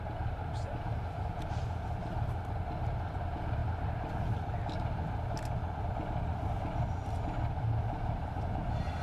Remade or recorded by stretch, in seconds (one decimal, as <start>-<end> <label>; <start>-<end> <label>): 0.0-9.0 recorded